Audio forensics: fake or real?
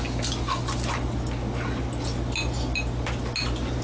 real